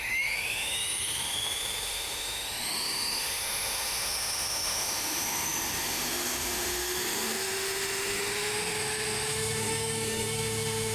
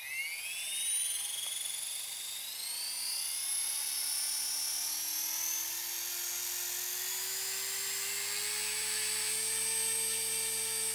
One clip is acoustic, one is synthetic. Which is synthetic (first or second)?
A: first